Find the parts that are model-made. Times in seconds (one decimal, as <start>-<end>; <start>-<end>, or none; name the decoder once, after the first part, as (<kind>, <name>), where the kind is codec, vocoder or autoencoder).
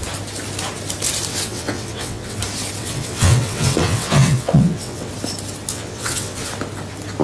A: 1.3-2.4 (vocoder, WaveNeXt); 2.8-5.1; 5.7-6.5